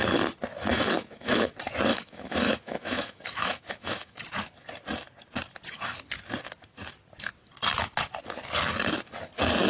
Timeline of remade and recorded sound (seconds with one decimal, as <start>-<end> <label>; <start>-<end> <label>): 0.0-0.7 recorded; 0.7-1.5 remade; 1.5-1.9 recorded; 1.9-4.2 remade; 4.2-9.7 recorded